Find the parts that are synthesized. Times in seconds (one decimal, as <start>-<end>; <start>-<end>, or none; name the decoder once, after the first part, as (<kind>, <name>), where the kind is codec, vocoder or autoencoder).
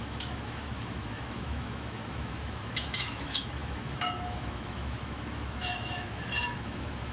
0.0-7.1 (autoencoder, DAC-VAE)